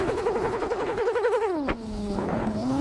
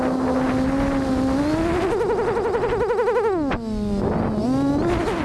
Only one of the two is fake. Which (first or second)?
first